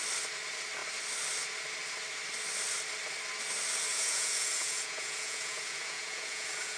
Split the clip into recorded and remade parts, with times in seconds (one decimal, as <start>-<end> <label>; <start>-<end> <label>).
0.0-3.9 recorded; 3.9-6.8 remade